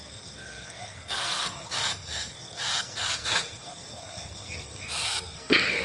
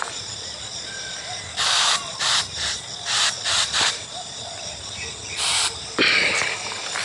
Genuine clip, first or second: second